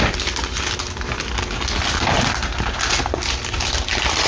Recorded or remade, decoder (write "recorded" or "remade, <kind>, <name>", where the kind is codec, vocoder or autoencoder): recorded